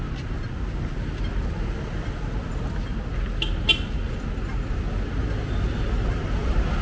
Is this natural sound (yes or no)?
yes